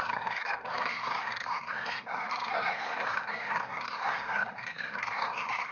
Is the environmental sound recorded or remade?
remade